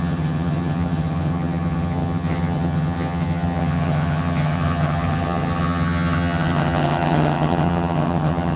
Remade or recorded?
remade